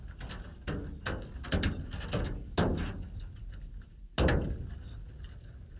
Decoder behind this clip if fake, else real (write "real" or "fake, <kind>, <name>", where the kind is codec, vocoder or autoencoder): real